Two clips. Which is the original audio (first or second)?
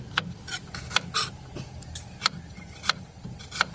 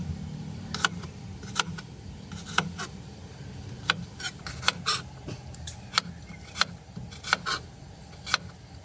second